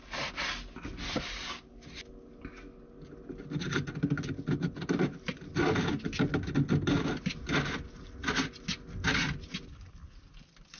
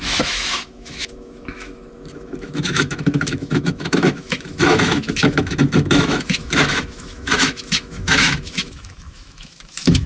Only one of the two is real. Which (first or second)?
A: first